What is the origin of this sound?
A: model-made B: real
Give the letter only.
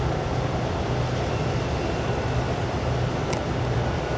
B